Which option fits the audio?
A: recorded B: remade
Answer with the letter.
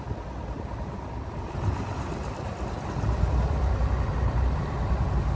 B